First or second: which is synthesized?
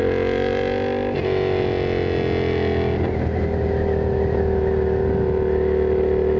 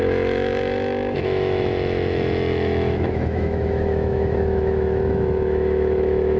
second